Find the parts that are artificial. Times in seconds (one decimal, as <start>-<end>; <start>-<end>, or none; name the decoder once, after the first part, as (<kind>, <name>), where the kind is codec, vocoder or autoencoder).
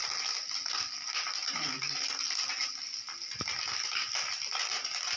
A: none